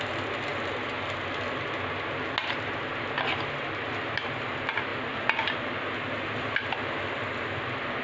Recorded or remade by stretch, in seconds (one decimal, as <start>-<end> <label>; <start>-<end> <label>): 0.0-8.0 recorded